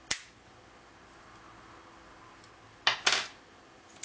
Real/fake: real